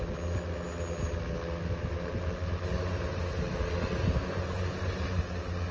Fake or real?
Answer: real